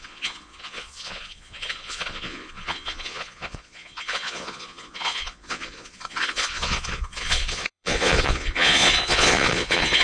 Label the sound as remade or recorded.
remade